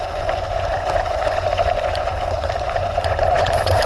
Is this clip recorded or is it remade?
remade